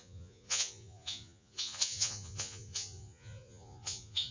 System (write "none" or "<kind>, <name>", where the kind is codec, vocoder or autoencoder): vocoder, Vocos